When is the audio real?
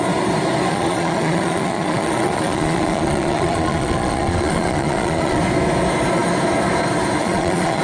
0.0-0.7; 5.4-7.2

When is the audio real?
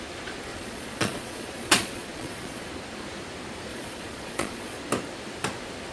0.0-0.5; 2.7-3.7; 4.8-5.9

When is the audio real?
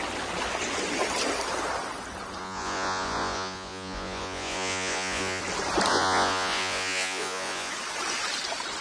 0.0-2.4; 5.4-5.9; 7.7-8.8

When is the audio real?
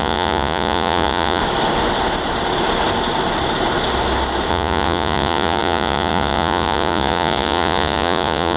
1.4-4.5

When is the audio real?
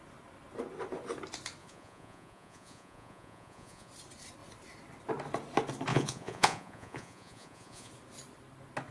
0.0-1.6; 3.9-5.9; 7.9-8.9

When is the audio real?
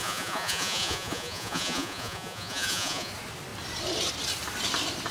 3.1-5.1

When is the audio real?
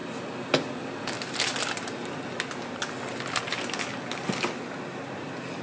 0.0-5.6